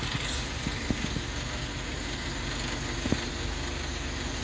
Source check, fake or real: real